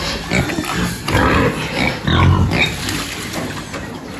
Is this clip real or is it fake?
real